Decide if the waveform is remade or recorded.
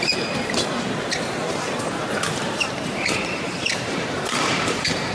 remade